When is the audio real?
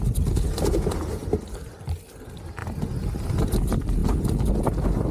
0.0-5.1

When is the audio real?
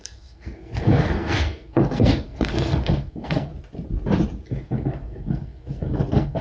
3.5-4.5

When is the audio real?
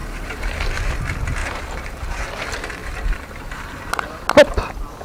0.7-1.4; 2.2-2.8; 4.0-5.0